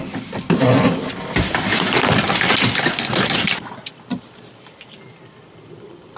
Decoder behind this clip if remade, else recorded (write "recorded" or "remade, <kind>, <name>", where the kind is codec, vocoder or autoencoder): remade, vocoder, BigVGAN v2